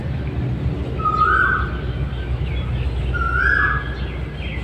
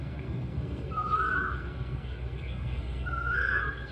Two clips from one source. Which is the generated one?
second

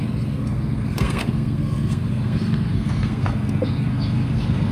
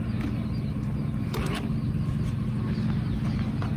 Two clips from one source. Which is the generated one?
first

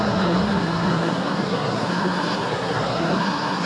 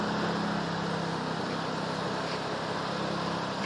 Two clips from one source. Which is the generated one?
first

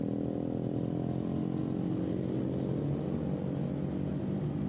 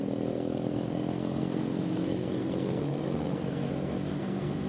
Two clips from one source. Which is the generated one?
second